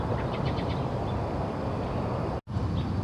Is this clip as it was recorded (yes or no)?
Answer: yes